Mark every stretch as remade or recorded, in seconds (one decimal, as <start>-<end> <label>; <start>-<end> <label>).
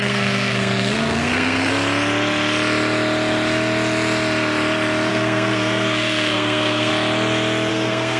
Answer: 0.0-1.7 remade; 1.7-5.1 recorded; 5.1-6.9 remade; 6.9-7.7 recorded; 7.7-8.2 remade